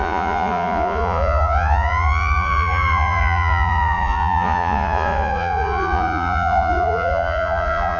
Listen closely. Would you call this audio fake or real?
fake